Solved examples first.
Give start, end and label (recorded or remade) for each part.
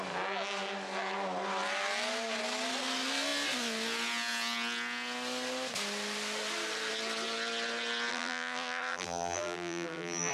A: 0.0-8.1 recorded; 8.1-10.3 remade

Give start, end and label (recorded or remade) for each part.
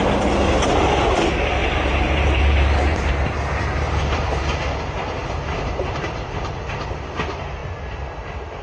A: 0.0-1.6 recorded; 1.6-4.6 remade; 4.6-5.2 recorded; 5.2-6.7 remade; 6.7-8.6 recorded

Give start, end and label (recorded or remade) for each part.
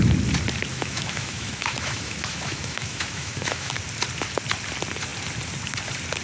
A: 0.0-0.7 recorded; 0.7-3.7 remade; 3.7-6.2 recorded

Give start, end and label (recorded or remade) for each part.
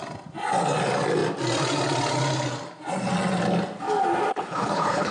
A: 0.0-4.3 recorded; 4.3-5.1 remade